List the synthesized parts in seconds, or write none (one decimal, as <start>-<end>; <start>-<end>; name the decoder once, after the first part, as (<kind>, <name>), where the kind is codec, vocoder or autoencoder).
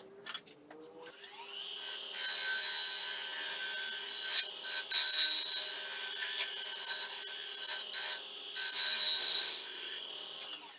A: 9.2-10.1 (codec, ZipCodec)